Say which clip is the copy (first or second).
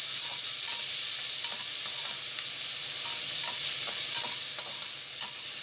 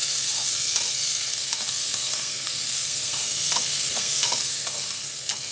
second